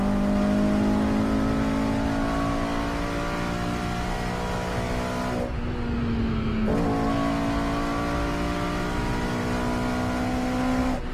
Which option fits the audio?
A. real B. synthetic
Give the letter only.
A